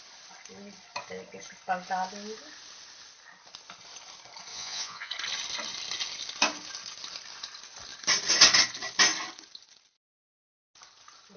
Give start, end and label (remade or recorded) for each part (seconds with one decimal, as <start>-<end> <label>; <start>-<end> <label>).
0.0-4.5 recorded; 4.5-5.1 remade; 5.1-11.4 recorded